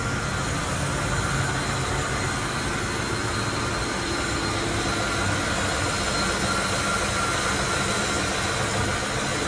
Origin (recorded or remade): recorded